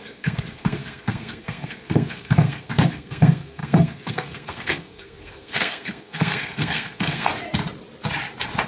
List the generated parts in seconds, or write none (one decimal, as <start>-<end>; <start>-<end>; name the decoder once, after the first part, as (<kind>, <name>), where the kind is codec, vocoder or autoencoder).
0.0-7.3 (codec, SNAC)